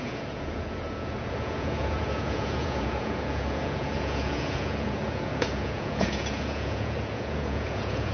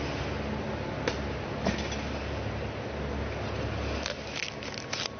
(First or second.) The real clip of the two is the second